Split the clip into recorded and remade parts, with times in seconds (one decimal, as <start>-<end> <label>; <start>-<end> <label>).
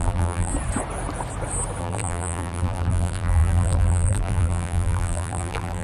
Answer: 0.0-0.5 remade; 0.5-1.8 recorded; 1.8-5.8 remade